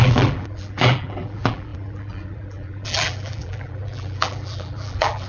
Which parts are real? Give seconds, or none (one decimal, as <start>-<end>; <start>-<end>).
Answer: none